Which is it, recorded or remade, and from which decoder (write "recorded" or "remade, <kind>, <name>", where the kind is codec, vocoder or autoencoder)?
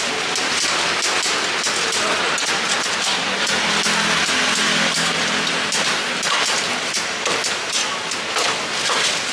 recorded